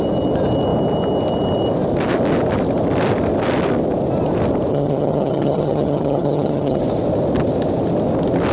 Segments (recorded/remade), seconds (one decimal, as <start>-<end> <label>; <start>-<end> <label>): 0.0-4.7 recorded; 4.7-6.8 remade; 6.8-8.5 recorded